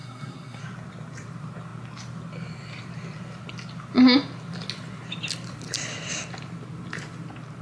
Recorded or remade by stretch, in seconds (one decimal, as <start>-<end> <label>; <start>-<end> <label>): 0.0-0.6 remade; 0.6-7.6 recorded